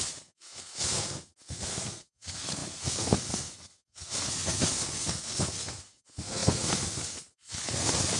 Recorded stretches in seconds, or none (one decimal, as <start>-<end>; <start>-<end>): none